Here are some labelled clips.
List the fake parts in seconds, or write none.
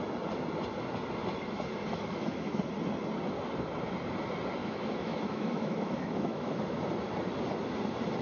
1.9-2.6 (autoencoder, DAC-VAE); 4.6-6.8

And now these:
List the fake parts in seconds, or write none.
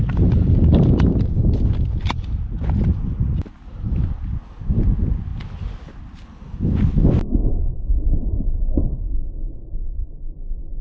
none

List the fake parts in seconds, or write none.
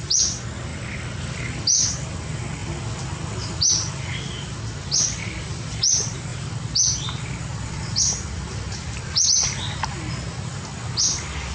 none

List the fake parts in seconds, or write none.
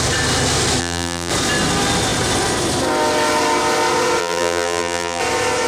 0.8-1.3 (vocoder, BigVGAN v2); 4.2-5.2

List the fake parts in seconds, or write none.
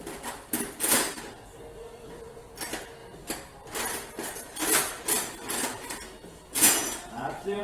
5.6-7.6 (vocoder, Vocos)